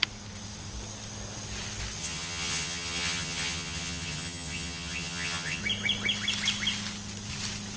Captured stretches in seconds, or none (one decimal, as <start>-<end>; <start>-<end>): 0.0-2.0; 5.6-7.8